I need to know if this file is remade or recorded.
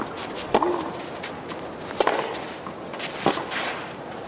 recorded